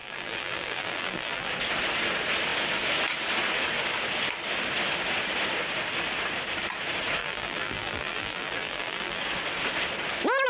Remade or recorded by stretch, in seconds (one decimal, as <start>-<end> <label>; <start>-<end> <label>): 0.0-1.5 remade; 1.5-7.2 recorded; 7.2-9.2 remade; 9.2-10.5 recorded